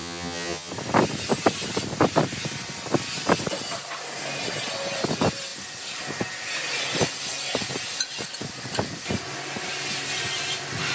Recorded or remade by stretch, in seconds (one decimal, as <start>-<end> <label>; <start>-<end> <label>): 0.0-0.7 remade; 0.7-10.9 recorded